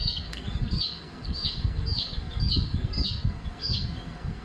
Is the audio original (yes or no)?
no